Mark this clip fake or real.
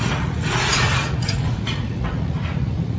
fake